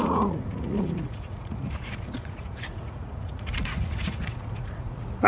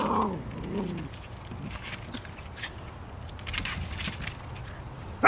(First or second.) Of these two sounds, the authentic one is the second